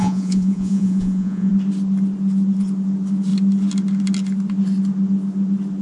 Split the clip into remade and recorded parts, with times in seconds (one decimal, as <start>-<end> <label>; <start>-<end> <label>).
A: 0.0-1.5 remade; 1.5-5.8 recorded